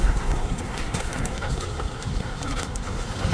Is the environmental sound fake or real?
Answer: fake